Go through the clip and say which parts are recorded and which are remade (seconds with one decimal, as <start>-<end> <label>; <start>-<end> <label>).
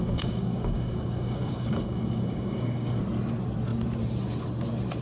0.0-3.0 remade; 3.0-5.0 recorded